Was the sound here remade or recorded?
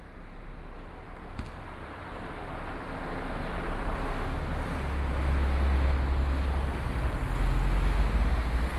recorded